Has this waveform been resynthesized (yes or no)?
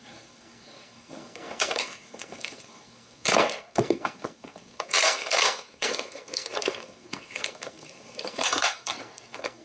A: yes